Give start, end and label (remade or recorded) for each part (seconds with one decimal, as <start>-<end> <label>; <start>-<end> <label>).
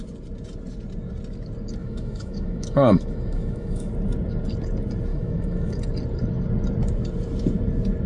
0.0-1.8 recorded; 1.8-3.9 remade; 3.9-5.1 recorded; 5.1-5.8 remade; 5.8-8.1 recorded